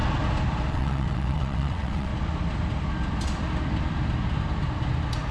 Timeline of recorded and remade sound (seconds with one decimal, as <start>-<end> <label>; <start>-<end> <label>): 0.0-0.7 recorded; 0.7-2.1 remade; 2.1-5.3 recorded